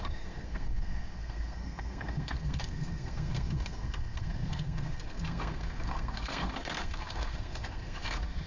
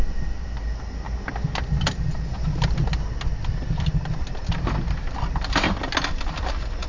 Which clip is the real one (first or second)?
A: second